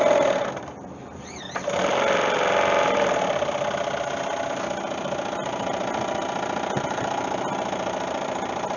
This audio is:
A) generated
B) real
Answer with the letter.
B